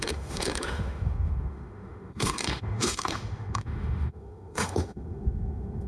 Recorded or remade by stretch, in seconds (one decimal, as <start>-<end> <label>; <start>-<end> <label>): 0.0-5.9 remade